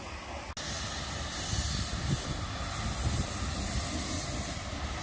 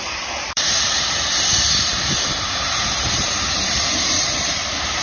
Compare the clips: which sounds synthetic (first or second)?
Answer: second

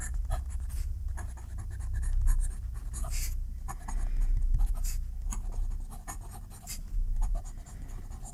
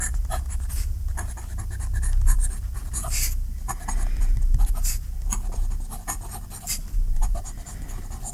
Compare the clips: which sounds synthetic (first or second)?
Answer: second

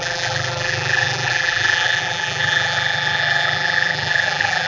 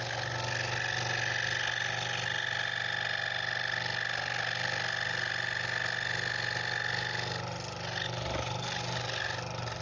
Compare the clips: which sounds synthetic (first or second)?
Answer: first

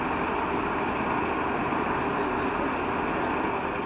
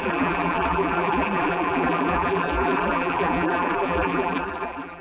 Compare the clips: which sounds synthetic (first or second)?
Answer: second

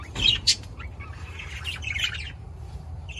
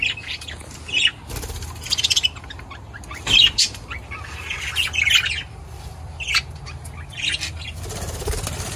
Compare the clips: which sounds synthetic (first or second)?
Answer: first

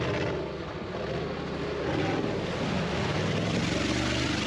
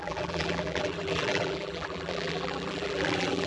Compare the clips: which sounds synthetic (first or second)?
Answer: second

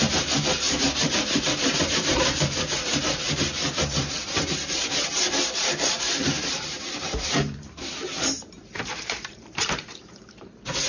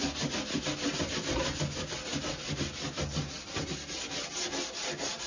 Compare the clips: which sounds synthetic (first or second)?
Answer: first